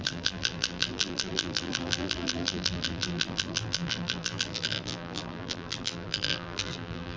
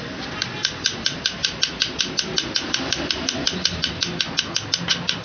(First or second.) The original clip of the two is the second